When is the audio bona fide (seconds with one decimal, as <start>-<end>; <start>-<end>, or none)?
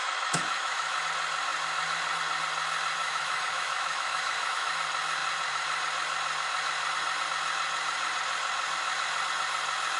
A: 1.0-3.0; 4.7-10.0